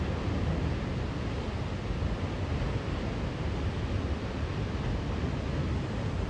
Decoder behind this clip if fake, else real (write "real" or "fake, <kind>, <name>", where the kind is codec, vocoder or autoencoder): real